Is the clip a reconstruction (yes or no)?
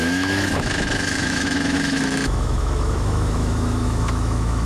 yes